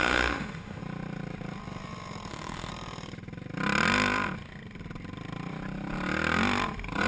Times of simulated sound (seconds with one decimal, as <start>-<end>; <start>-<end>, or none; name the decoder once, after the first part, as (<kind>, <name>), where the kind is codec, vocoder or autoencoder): 0.0-0.8 (autoencoder, DAC-VAE); 2.3-2.7